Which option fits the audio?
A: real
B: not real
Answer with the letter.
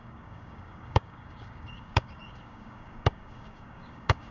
B